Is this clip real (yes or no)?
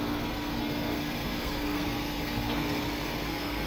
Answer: no